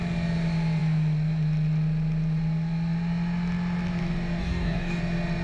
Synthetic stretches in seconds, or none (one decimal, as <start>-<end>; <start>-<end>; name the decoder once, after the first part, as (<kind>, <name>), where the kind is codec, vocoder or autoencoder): 4.4-5.0 (codec, DAC)